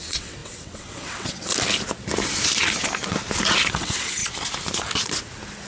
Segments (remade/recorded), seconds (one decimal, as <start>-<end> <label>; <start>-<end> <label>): 0.0-1.5 remade; 1.5-3.7 recorded; 3.7-4.2 remade; 4.2-5.7 recorded